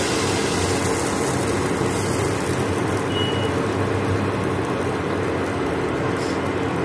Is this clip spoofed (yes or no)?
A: no